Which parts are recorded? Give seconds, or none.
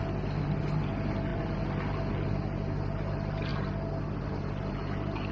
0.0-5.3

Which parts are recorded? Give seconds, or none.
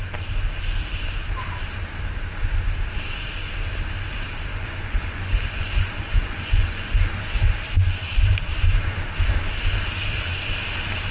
0.0-4.5; 7.1-11.1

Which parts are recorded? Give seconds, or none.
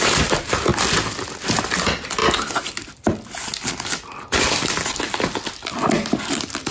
0.0-6.7